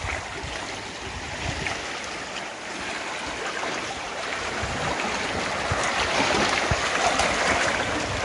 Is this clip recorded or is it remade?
recorded